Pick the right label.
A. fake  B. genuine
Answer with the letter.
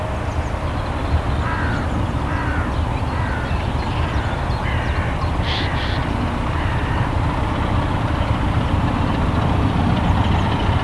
B